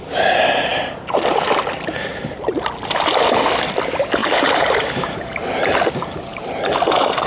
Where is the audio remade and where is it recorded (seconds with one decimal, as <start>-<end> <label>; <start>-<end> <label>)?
0.0-4.2 recorded; 4.2-5.3 remade; 5.3-7.3 recorded